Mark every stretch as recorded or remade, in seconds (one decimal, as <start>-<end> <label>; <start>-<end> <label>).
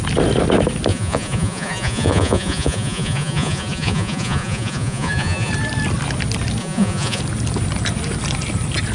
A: 0.0-0.9 recorded; 0.9-5.5 remade; 5.5-6.6 recorded; 6.6-7.2 remade; 7.2-8.9 recorded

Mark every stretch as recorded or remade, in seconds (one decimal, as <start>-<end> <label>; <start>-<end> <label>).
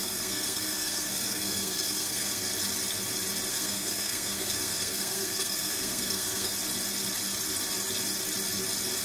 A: 0.0-2.5 remade; 2.5-3.5 recorded; 3.5-6.5 remade; 6.5-9.0 recorded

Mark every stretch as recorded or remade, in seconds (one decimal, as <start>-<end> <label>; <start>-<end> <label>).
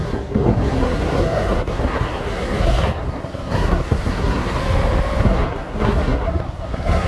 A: 0.0-4.6 remade; 4.6-5.2 recorded; 5.2-7.1 remade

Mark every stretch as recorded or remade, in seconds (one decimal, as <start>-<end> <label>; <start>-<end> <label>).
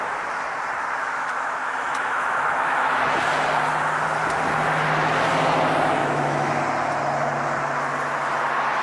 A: 0.0-1.0 recorded; 1.0-3.0 remade; 3.0-6.0 recorded; 6.0-6.6 remade; 6.6-8.8 recorded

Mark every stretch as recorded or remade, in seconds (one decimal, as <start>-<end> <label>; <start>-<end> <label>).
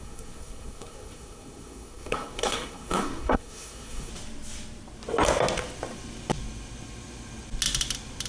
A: 0.0-4.1 remade; 4.1-8.3 recorded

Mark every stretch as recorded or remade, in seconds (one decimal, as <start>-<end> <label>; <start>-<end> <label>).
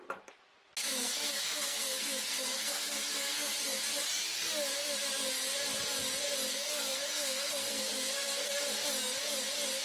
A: 0.0-0.8 recorded; 0.8-3.5 remade; 3.5-6.5 recorded; 6.5-8.5 remade; 8.5-9.8 recorded